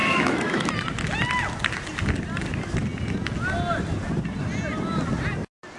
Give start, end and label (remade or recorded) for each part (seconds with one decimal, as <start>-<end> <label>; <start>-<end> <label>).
0.0-0.7 remade; 0.7-5.8 recorded